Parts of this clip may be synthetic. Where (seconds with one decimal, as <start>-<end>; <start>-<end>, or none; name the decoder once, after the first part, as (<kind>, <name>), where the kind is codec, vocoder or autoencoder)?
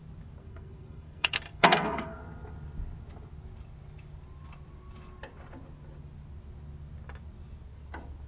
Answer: 0.4-2.2 (codec, SNAC)